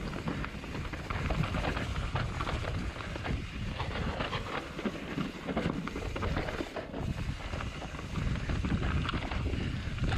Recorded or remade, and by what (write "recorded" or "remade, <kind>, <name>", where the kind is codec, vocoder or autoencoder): recorded